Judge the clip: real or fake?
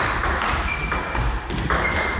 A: real